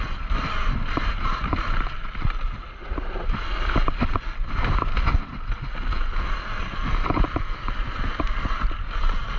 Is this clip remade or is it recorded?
recorded